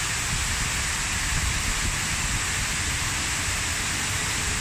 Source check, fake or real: real